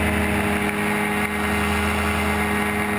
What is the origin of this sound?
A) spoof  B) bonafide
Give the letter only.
B